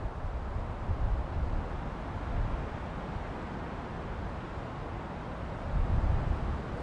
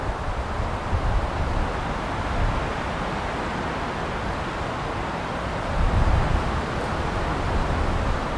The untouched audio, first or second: first